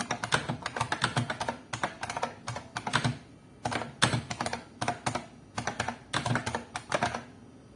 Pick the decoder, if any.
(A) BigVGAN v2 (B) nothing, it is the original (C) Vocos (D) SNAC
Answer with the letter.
B